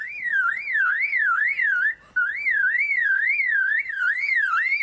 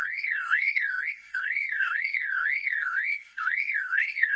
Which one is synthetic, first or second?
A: second